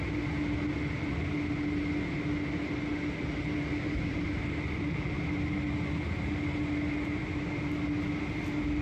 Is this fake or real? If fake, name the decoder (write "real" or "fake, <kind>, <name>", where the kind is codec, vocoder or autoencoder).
real